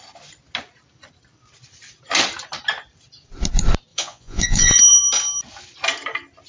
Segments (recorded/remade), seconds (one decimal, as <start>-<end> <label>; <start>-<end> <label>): 0.0-3.9 recorded; 3.9-4.8 remade; 4.8-6.5 recorded